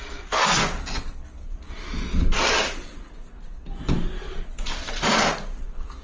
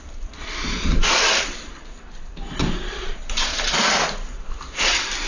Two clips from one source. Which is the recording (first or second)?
first